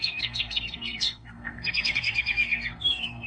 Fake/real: fake